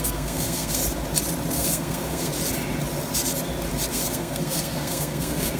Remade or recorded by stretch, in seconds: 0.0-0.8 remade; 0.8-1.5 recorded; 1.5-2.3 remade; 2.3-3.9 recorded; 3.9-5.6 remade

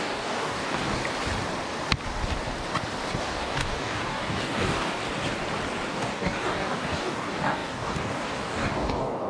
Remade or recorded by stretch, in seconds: 0.0-1.0 remade; 1.0-3.2 recorded; 3.2-5.0 remade; 5.0-5.9 recorded; 5.9-9.3 remade

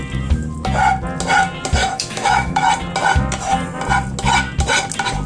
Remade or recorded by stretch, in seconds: 0.0-1.8 recorded; 1.8-2.7 remade; 2.7-5.3 recorded

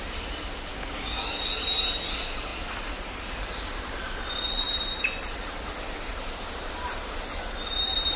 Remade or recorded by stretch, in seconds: 0.0-0.7 recorded; 0.7-1.2 remade; 1.2-8.2 recorded